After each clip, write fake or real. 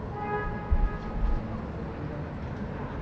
real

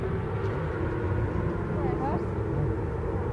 real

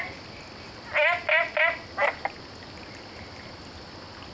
real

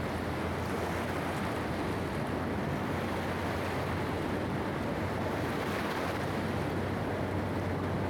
real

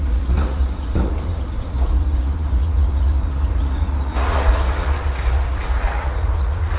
fake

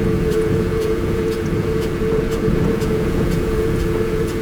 fake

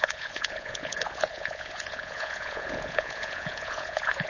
fake